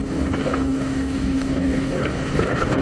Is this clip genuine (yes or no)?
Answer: no